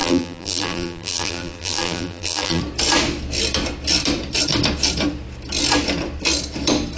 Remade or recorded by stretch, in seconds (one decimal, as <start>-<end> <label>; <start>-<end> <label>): 0.0-2.6 remade; 2.6-7.0 recorded

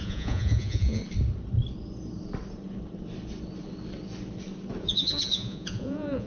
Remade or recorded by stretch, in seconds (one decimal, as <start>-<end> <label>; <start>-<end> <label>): 0.0-1.0 remade; 1.0-4.8 recorded; 4.8-6.3 remade